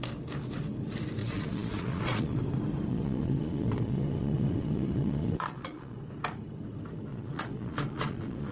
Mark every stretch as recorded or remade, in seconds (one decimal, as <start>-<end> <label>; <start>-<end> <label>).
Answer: 0.0-1.2 recorded; 1.2-2.4 remade; 2.4-2.9 recorded; 2.9-6.0 remade; 6.0-7.1 recorded; 7.1-8.5 remade